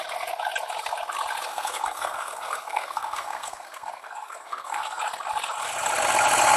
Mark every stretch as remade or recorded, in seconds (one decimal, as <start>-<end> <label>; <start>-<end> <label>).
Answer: 0.0-1.5 recorded; 1.5-5.0 remade; 5.0-6.6 recorded